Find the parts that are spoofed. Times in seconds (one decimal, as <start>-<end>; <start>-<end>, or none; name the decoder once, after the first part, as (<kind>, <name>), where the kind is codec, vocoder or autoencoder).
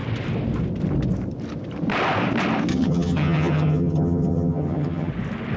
2.7-5.1 (vocoder, HiFi-GAN)